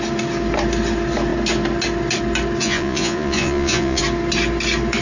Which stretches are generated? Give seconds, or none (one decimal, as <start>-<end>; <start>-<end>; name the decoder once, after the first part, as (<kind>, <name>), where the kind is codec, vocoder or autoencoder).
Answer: 2.6-4.0 (vocoder, Vocos)